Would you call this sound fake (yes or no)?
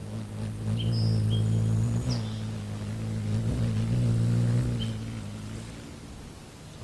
no